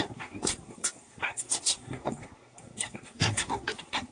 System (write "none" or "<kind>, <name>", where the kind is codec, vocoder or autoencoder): codec, SNAC